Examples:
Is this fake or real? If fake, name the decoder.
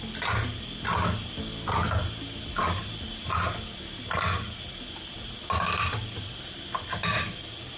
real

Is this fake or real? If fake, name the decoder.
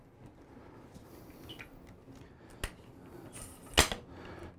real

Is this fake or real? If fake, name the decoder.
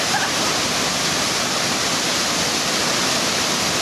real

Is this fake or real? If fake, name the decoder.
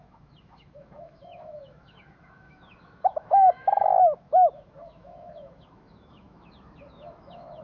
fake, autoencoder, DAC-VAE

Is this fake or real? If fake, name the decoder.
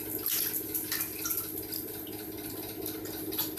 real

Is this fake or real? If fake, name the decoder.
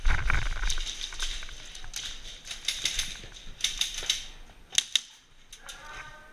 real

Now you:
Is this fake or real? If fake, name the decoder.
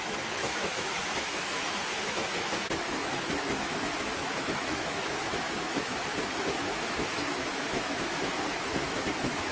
fake, autoencoder, DAC-VAE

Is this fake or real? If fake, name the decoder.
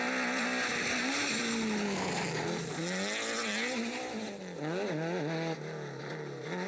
real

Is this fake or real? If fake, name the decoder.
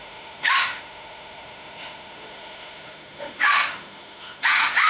fake, autoencoder, DAC-VAE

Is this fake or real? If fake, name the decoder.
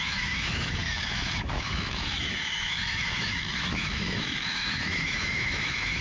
fake, autoencoder, DAC-VAE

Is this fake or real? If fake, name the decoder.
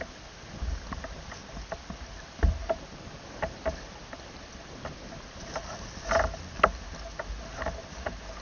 real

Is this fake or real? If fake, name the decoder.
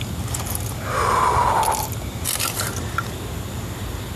real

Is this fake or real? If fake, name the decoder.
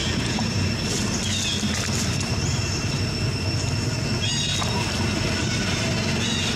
real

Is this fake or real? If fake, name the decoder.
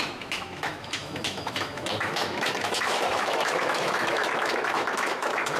fake, autoencoder, DAC-VAE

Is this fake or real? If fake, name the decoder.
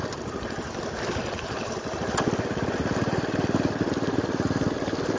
real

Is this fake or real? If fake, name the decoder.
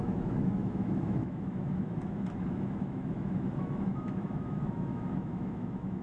fake, autoencoder, DAC-VAE